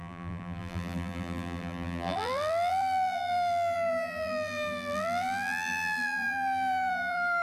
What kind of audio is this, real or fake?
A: fake